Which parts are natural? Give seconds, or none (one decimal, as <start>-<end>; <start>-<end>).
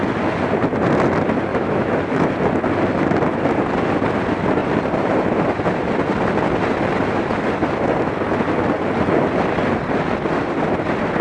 0.0-1.5; 2.3-11.2